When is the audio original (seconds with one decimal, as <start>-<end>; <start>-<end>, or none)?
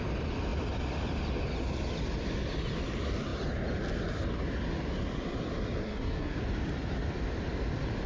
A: 0.0-5.8; 6.4-8.1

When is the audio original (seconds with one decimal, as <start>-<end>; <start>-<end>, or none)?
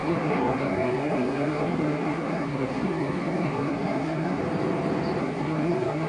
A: 4.4-5.2